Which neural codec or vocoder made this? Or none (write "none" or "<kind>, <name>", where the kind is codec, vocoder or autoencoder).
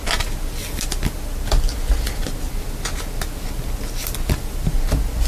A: none